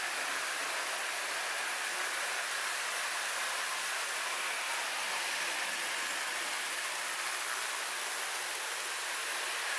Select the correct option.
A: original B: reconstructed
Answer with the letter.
A